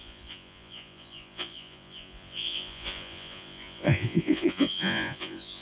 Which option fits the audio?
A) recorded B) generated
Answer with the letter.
B